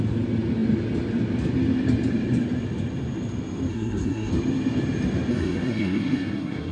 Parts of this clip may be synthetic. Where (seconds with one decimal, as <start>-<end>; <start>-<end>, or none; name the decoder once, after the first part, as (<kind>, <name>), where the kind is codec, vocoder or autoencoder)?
3.7-4.3 (codec, SNAC); 5.3-6.7